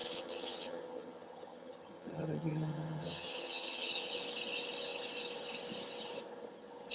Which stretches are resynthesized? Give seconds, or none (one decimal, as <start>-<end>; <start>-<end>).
0.0-4.1